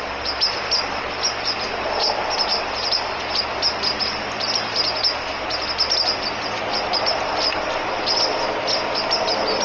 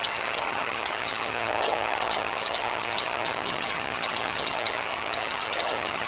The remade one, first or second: second